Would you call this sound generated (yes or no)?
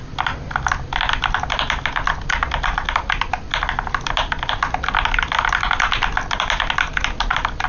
no